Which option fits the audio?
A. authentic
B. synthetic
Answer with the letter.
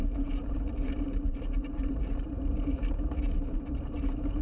B